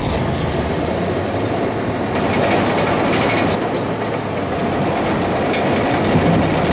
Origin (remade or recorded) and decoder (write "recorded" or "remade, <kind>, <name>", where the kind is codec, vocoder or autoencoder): recorded